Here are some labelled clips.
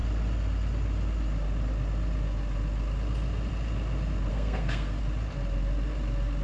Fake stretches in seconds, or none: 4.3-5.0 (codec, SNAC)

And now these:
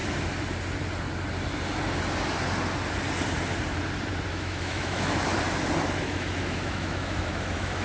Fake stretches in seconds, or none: 4.3-5.3 (autoencoder, DAC-VAE); 6.0-7.8

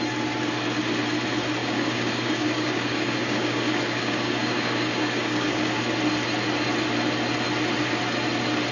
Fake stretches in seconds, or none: 1.6-5.8 (codec, DAC)

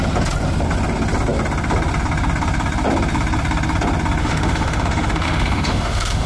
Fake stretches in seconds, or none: 4.2-6.3 (autoencoder, DAC-VAE)

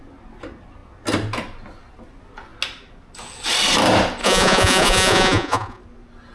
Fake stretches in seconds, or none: 4.2-5.8 (vocoder, Vocos)

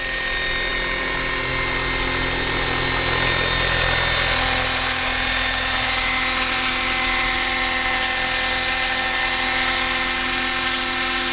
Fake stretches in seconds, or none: none

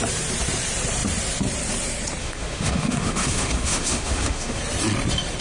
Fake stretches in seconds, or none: 2.2-4.6 (autoencoder, DAC-VAE)

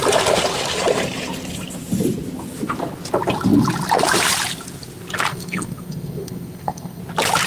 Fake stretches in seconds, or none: 5.3-7.0 (codec, SNAC)